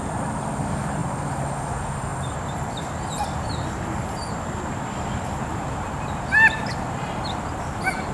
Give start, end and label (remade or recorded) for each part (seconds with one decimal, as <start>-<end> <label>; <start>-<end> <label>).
0.0-8.1 remade

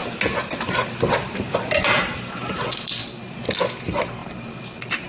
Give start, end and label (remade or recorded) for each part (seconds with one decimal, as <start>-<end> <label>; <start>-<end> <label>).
0.0-1.5 recorded; 1.5-3.0 remade; 3.0-3.6 recorded; 3.6-4.2 remade; 4.2-5.1 recorded

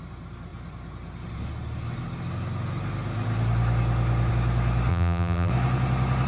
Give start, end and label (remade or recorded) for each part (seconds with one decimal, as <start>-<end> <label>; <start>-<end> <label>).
0.0-4.9 recorded; 4.9-5.5 remade; 5.5-6.3 recorded

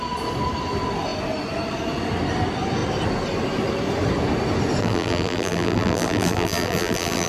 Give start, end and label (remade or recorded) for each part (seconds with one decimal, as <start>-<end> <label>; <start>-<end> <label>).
0.0-4.8 recorded; 4.8-7.3 remade

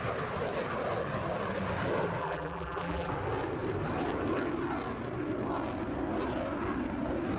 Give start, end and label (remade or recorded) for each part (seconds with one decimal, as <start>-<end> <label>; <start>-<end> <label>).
0.0-2.2 recorded; 2.2-3.1 remade; 3.1-7.4 recorded

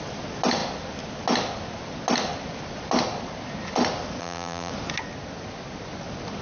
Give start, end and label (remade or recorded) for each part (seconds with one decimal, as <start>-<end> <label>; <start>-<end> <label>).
0.0-4.2 recorded; 4.2-4.7 remade; 4.7-6.4 recorded

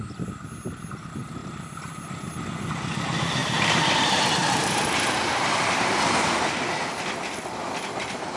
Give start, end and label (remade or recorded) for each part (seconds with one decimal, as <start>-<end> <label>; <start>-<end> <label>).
0.0-3.4 recorded; 3.4-4.0 remade; 4.0-4.4 recorded; 4.4-6.0 remade; 6.0-8.4 recorded

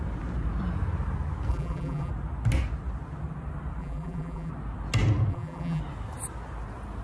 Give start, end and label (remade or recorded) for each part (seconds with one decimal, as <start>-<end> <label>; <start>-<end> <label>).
0.0-1.5 recorded; 1.5-2.1 remade; 2.1-3.8 recorded; 3.8-4.5 remade; 4.5-5.3 recorded; 5.3-5.8 remade; 5.8-7.0 recorded